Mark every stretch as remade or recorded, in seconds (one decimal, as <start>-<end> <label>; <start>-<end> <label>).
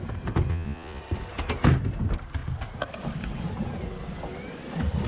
0.0-0.5 recorded; 0.5-1.0 remade; 1.0-5.1 recorded